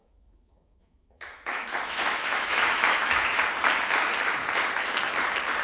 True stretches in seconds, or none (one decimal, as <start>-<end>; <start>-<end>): 3.4-5.6